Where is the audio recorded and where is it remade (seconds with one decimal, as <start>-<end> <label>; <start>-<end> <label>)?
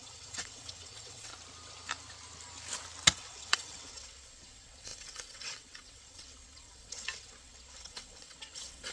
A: 0.0-1.3 remade; 1.3-3.1 recorded; 3.1-8.9 remade